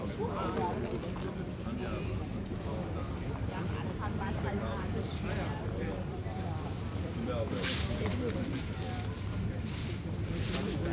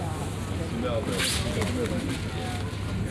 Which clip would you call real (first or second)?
second